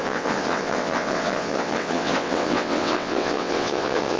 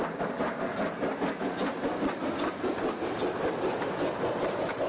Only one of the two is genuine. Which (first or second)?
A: second